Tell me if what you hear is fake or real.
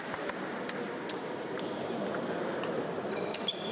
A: real